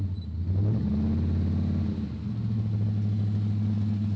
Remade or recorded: recorded